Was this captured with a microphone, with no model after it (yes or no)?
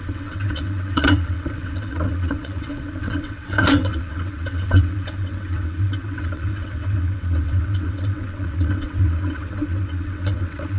no